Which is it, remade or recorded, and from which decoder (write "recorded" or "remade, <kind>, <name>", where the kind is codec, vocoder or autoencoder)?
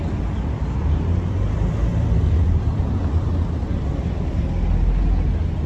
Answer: recorded